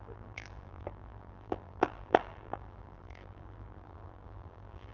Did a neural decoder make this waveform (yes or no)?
yes